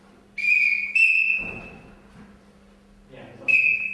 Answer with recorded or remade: recorded